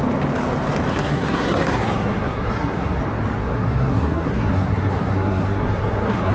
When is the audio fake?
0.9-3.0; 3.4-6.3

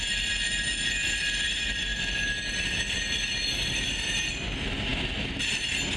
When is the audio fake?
none